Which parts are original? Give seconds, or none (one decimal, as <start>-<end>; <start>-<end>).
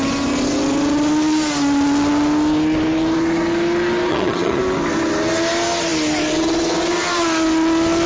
0.0-4.1; 4.6-8.1